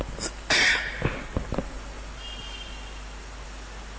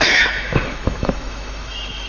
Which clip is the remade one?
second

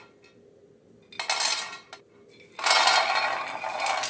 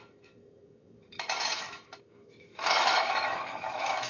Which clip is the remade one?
second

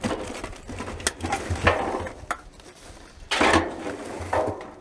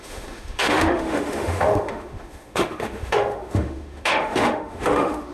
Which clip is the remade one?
second